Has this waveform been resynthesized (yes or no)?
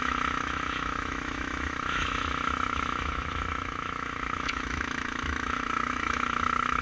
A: yes